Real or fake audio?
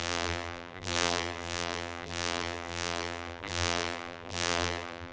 fake